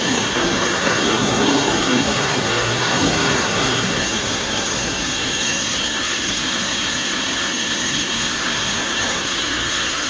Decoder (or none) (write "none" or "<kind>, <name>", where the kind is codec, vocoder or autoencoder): codec, SNAC